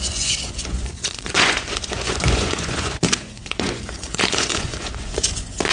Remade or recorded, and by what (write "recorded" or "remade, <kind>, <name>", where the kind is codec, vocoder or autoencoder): remade, vocoder, Vocos